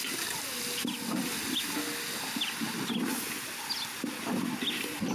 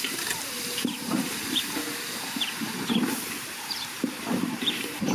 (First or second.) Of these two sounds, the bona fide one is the first